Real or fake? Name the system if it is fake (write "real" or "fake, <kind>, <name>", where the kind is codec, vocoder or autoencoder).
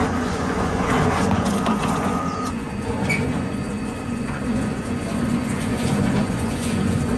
fake, vocoder, Vocos